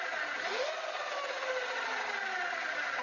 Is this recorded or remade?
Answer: recorded